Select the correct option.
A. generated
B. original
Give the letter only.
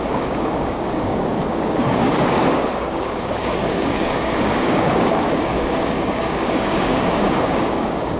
A